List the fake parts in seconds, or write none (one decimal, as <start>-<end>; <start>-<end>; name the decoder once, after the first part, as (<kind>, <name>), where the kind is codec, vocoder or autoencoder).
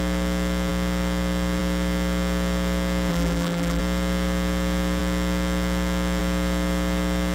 3.1-3.8 (vocoder, BigVGAN v2)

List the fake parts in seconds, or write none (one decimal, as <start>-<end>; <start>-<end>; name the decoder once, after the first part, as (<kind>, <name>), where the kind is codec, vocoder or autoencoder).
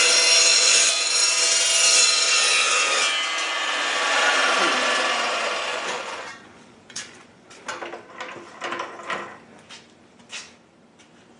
0.5-1.2 (vocoder, Vocos); 5.7-7.6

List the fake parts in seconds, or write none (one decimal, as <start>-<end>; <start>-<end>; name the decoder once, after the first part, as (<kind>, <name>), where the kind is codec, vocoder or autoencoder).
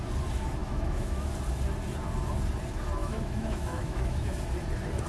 0.6-1.3 (autoencoder, DAC-VAE); 3.0-4.3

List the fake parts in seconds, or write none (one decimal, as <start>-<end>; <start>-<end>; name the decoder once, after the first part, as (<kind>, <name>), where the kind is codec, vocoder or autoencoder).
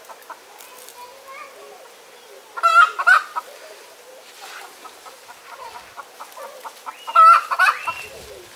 none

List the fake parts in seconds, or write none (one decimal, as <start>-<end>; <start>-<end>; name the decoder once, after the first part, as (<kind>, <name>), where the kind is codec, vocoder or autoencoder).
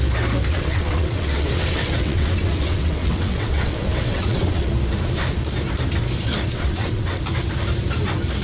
0.5-4.7 (vocoder, WaveNeXt); 6.5-7.2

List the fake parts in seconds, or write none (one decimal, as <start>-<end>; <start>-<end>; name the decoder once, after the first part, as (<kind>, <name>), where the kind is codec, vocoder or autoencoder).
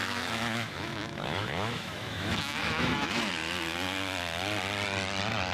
0.0-3.3 (autoencoder, DAC-VAE)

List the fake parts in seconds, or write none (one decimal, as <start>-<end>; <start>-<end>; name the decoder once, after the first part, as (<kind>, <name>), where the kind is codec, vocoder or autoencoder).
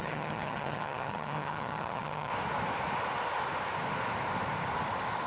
0.0-2.3 (vocoder, HiFi-GAN)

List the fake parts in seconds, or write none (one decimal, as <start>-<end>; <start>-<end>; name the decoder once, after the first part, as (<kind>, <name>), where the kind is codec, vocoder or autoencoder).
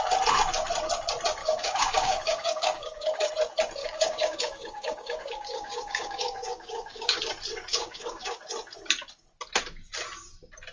1.4-3.3 (codec, DAC); 3.8-7.2; 7.7-8.4